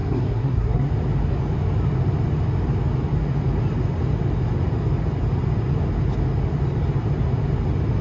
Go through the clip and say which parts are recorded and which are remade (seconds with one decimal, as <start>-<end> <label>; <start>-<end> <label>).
0.0-0.9 remade; 0.9-8.0 recorded